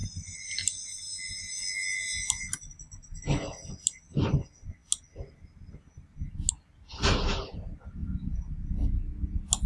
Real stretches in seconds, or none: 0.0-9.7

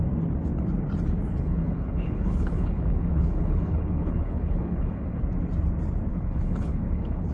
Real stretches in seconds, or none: 0.0-1.3; 5.2-6.1

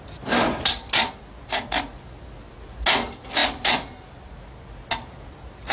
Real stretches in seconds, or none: 0.0-5.7